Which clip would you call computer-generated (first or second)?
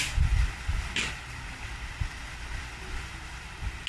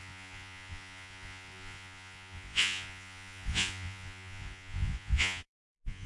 second